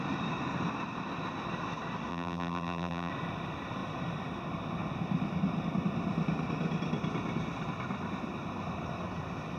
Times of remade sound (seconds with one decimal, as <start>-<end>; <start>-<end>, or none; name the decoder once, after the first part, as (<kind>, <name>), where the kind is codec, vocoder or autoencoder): 2.1-3.1 (vocoder, BigVGAN v2)